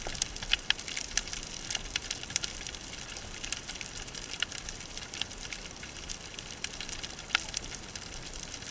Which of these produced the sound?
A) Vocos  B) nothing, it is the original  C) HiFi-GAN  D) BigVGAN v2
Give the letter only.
D